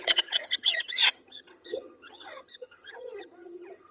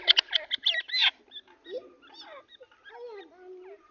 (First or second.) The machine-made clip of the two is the first